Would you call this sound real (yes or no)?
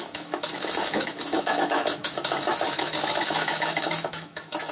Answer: no